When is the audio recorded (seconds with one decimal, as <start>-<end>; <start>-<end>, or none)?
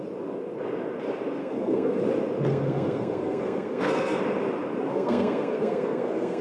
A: 0.0-1.4; 2.0-2.5; 4.2-4.9